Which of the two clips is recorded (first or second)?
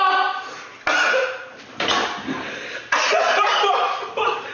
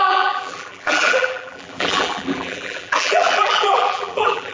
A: first